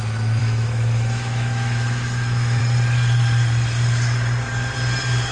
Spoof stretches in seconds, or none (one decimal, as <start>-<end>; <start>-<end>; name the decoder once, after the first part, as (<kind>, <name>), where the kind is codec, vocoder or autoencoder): 0.4-2.6 (autoencoder, DAC-VAE)